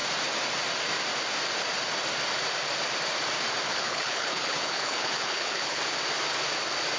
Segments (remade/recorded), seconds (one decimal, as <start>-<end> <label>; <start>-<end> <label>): 0.0-3.7 recorded; 3.7-5.8 remade; 5.8-7.0 recorded